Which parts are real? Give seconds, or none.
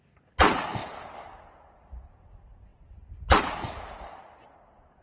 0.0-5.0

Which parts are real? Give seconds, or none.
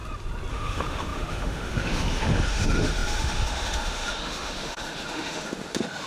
0.0-0.5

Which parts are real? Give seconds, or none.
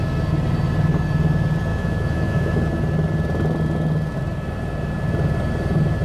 0.0-1.7; 2.7-6.0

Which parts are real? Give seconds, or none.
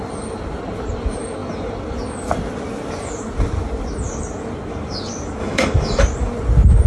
0.0-5.4; 6.0-6.9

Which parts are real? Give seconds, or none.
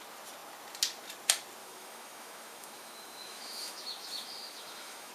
0.0-1.6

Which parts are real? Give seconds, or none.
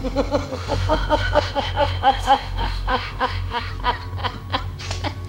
0.0-0.5; 3.7-5.3